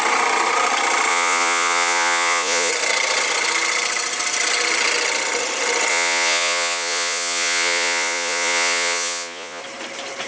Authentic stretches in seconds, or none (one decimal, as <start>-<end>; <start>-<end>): 0.0-1.1; 2.7-5.9; 9.6-10.3